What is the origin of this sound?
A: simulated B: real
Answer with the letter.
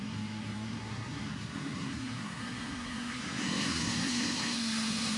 A